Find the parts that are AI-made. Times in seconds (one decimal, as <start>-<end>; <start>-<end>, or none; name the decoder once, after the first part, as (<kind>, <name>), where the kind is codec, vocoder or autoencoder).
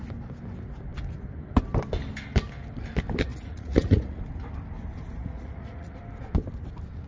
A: 3.3-4.2 (vocoder, Vocos); 5.2-6.0